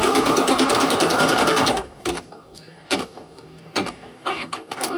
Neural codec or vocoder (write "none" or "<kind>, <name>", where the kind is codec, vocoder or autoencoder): codec, DAC